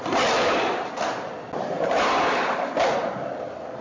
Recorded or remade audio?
recorded